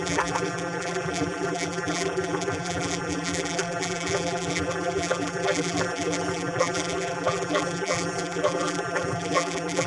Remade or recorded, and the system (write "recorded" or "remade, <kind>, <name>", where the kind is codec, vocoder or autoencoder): remade, vocoder, BigVGAN v2